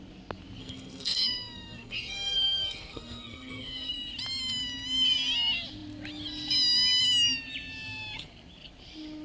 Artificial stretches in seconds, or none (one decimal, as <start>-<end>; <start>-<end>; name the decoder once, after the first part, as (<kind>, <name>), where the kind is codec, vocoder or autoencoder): 0.6-3.9 (codec, SNAC)